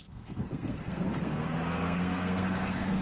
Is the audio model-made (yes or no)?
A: yes